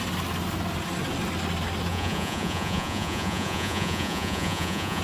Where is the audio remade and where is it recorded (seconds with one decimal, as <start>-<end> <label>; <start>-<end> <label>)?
0.0-1.9 recorded; 1.9-5.0 remade